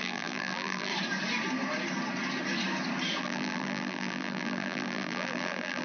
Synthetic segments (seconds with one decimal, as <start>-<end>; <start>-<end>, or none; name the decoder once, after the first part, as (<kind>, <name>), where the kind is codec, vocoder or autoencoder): 0.0-0.9 (vocoder, BigVGAN v2); 3.2-5.8